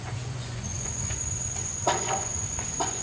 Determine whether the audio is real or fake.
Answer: fake